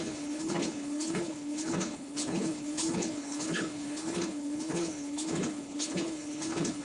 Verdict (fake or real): fake